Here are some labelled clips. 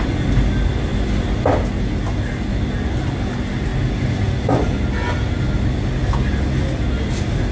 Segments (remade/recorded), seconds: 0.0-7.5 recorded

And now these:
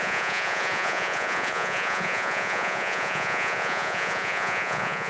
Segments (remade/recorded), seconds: 0.0-5.1 remade

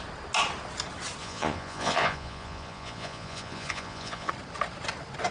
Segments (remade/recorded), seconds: 0.0-1.2 recorded; 1.2-4.3 remade; 4.3-5.3 recorded

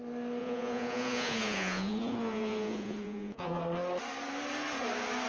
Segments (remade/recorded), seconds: 0.0-0.4 recorded; 0.4-3.6 remade; 3.6-5.3 recorded

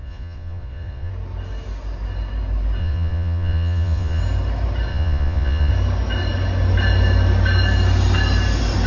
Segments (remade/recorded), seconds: 0.0-1.1 remade; 1.1-2.8 recorded; 2.8-4.2 remade; 4.2-4.9 recorded; 4.9-5.7 remade; 5.7-8.9 recorded

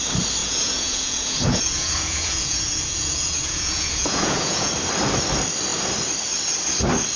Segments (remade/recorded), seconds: 0.0-0.4 recorded; 0.4-4.7 remade; 4.7-7.2 recorded

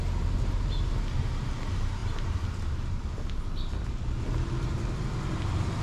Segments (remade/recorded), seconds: 0.0-5.8 recorded

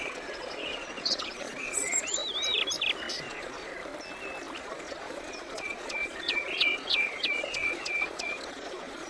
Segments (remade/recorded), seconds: 0.0-2.2 remade; 2.2-3.1 recorded; 3.1-3.7 remade; 3.7-4.6 recorded; 4.6-9.1 remade